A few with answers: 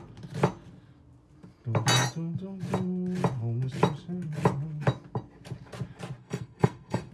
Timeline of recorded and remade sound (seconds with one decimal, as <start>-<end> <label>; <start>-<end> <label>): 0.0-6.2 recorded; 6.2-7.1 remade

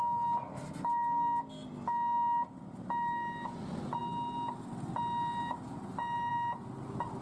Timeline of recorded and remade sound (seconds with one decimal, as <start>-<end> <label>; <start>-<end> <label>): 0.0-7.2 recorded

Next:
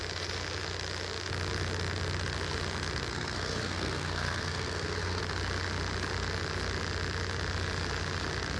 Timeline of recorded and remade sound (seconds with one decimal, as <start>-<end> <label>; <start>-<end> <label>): 0.0-3.1 recorded; 3.1-5.2 remade; 5.2-8.6 recorded

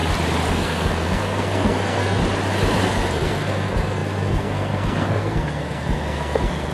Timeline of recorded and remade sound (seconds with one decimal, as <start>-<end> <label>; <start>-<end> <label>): 0.0-0.5 recorded; 0.5-2.2 remade; 2.2-2.8 recorded; 2.8-6.7 remade

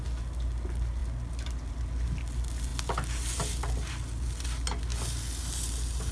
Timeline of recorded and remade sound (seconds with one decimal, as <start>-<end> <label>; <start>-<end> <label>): 0.0-6.1 recorded

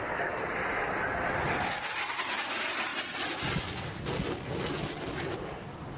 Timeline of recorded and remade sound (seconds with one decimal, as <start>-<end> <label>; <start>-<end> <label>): 0.0-6.0 recorded